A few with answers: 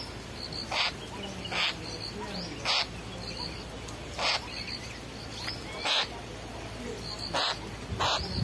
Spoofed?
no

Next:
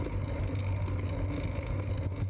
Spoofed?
no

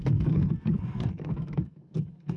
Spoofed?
yes